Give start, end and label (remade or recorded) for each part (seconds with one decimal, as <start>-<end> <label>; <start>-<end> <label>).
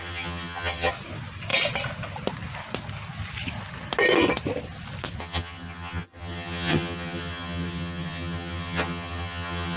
0.0-0.9 remade; 0.9-5.2 recorded; 5.2-9.8 remade